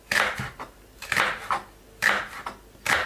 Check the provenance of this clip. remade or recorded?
recorded